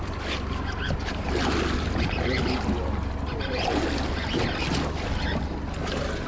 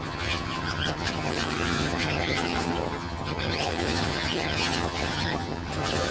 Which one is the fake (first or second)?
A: second